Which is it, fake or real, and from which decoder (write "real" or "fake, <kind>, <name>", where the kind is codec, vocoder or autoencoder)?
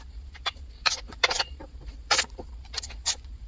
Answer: fake, vocoder, Vocos